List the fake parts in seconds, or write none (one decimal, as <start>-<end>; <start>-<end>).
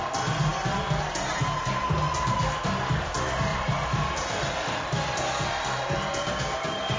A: 3.5-5.2